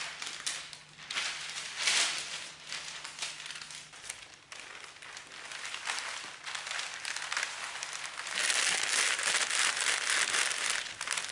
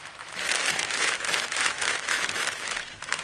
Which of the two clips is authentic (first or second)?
first